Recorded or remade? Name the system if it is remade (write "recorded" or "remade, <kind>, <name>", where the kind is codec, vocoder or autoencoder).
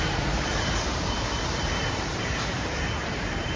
remade, vocoder, BigVGAN v2